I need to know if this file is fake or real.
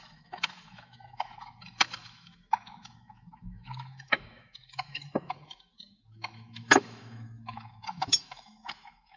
fake